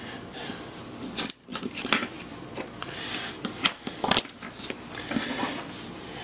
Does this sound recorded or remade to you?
remade